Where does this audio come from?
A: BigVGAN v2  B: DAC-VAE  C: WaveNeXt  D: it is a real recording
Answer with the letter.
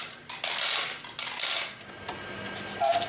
D